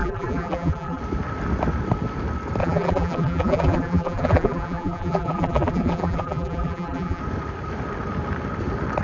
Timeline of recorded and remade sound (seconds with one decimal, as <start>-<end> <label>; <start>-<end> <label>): 0.0-1.0 remade; 1.0-2.6 recorded; 2.6-7.2 remade; 7.2-9.0 recorded